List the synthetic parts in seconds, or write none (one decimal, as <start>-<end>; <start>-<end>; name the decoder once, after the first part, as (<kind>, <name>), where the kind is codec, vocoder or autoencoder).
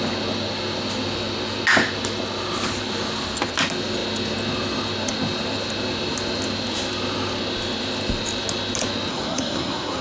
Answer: 9.1-10.0 (codec, SNAC)